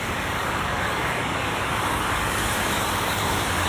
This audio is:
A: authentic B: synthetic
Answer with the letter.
B